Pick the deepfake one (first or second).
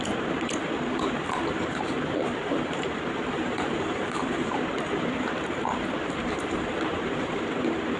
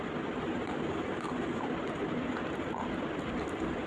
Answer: first